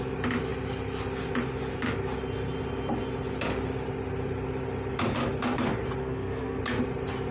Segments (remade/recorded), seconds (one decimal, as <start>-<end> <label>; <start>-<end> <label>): 0.0-6.0 recorded; 6.0-6.6 remade; 6.6-7.3 recorded

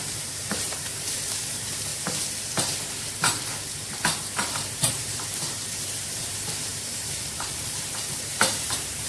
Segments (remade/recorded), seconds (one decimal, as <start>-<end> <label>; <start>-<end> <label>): 0.0-1.9 remade; 1.9-3.1 recorded; 3.1-3.5 remade; 3.5-4.7 recorded; 4.7-9.1 remade